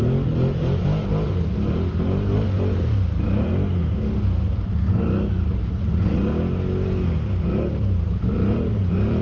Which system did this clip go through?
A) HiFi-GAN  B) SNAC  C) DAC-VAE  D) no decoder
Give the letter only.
D